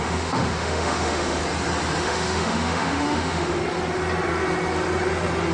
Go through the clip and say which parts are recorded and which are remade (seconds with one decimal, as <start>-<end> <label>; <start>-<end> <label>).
0.0-1.4 remade; 1.4-2.0 recorded; 2.0-3.6 remade; 3.6-5.5 recorded

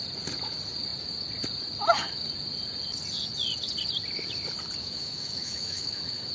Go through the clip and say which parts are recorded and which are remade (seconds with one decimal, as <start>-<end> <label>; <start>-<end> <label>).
0.0-4.8 recorded; 4.8-6.3 remade

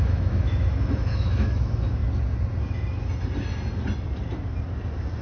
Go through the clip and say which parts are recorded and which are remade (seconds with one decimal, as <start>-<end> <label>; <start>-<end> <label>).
0.0-2.0 remade; 2.0-5.2 recorded

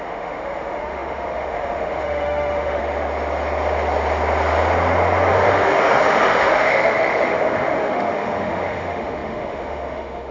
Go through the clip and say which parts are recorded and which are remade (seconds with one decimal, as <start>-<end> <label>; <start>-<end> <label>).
0.0-2.8 remade; 2.8-5.3 recorded; 5.3-10.3 remade

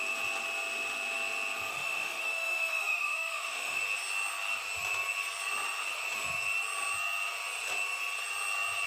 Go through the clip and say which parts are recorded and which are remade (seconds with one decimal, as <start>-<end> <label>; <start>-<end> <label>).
0.0-1.7 recorded; 1.7-3.8 remade; 3.8-8.9 recorded

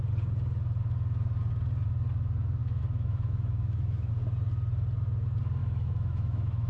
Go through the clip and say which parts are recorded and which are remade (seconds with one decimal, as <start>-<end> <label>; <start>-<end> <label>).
0.0-2.6 recorded; 2.6-4.1 remade; 4.1-5.6 recorded; 5.6-6.7 remade

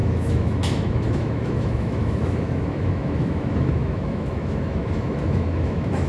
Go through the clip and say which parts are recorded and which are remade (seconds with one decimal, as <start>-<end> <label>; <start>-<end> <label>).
0.0-6.1 remade